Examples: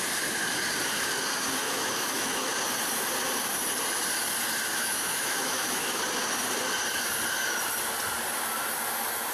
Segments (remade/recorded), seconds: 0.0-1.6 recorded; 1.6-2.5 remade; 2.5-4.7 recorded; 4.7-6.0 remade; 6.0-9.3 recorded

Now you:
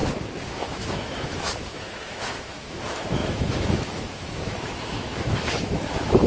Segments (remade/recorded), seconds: 0.0-6.3 remade

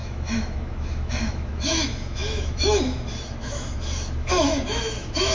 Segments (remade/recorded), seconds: 0.0-5.3 remade